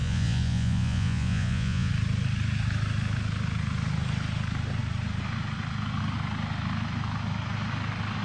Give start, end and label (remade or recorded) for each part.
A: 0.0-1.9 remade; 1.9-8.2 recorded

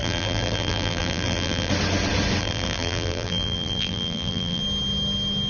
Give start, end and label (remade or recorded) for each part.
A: 0.0-1.7 remade; 1.7-2.4 recorded; 2.4-4.6 remade; 4.6-5.5 recorded

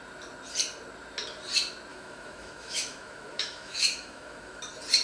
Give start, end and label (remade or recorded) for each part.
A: 0.0-1.9 recorded; 1.9-4.6 remade; 4.6-5.0 recorded